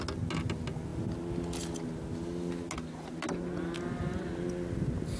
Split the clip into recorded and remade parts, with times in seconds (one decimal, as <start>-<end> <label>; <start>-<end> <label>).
0.0-5.2 recorded